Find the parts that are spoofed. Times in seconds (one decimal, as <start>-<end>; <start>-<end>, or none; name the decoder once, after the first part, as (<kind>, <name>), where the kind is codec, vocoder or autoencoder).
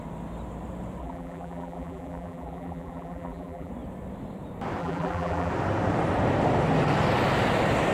1.0-3.7 (vocoder, BigVGAN v2); 4.8-5.5